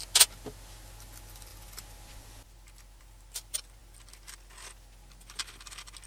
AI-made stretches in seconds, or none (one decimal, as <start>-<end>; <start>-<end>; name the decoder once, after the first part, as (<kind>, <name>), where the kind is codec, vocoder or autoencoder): none